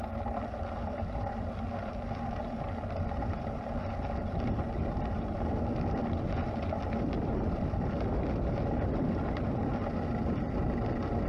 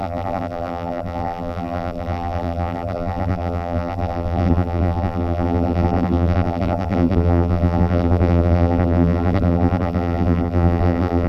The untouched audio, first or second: first